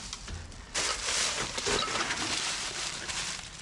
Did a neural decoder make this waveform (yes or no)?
yes